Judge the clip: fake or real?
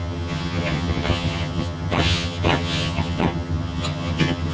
fake